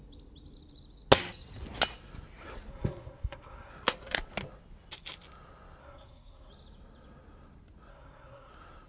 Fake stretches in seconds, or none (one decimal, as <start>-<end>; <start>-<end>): 2.7-3.7; 5.8-6.5; 7.9-8.5